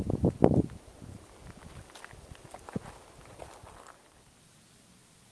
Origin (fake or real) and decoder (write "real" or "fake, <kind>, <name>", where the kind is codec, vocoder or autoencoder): real